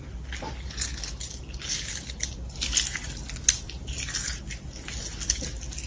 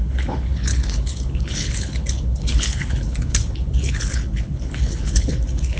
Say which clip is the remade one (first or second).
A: second